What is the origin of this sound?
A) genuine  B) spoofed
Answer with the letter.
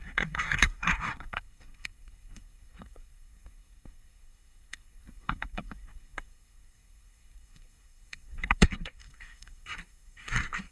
B